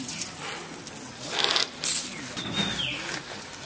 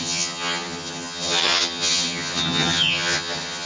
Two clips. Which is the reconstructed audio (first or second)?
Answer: second